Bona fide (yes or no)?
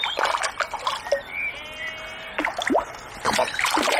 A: yes